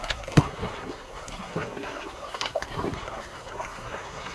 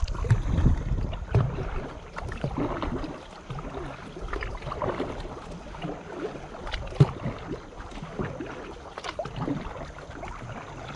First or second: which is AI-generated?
first